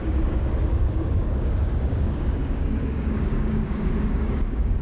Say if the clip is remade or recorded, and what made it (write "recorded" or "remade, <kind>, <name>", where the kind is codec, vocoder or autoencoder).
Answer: remade, codec, DAC